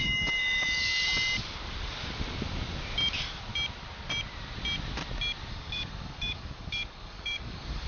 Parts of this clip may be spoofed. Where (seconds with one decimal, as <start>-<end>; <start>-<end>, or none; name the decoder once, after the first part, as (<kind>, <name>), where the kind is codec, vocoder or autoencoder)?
0.0-0.9 (codec, DAC); 5.5-7.9